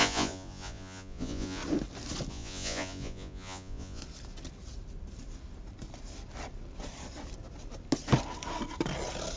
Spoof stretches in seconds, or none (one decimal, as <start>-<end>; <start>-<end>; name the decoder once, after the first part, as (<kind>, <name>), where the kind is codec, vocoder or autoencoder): 0.0-1.6 (vocoder, Vocos); 2.3-4.0